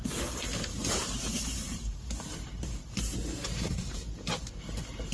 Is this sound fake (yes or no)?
yes